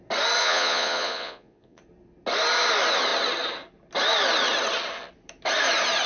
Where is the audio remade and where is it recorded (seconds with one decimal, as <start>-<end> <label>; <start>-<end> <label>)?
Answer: 0.0-0.4 recorded; 0.4-1.8 remade; 1.8-6.1 recorded